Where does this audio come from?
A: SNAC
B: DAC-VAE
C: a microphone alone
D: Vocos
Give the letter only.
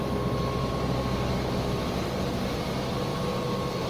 C